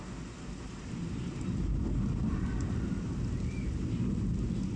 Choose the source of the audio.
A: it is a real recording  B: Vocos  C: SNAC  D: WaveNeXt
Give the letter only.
A